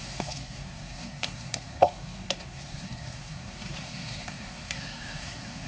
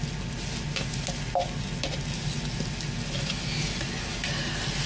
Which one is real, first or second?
second